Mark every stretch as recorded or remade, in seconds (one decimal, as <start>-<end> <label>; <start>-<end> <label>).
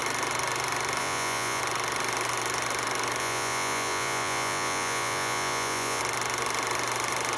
0.0-1.0 recorded; 1.0-1.6 remade; 1.6-3.2 recorded; 3.2-6.0 remade; 6.0-7.4 recorded